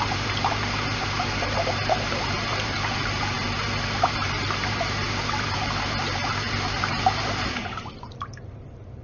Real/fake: fake